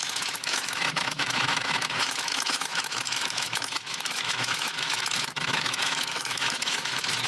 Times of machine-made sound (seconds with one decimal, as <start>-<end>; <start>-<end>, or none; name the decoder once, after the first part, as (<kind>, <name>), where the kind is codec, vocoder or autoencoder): 0.0-7.3 (autoencoder, DAC-VAE)